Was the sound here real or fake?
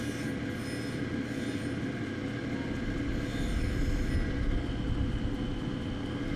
real